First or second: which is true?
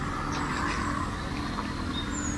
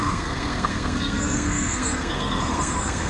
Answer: first